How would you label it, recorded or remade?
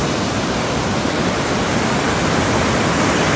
recorded